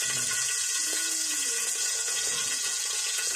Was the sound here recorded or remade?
remade